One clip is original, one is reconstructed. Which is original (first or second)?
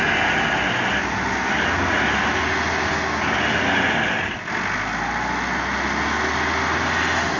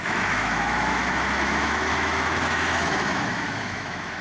first